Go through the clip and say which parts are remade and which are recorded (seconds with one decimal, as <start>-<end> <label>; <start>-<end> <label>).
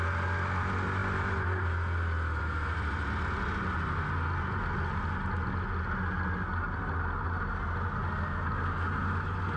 0.0-9.6 recorded